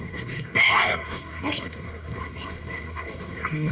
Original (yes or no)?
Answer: no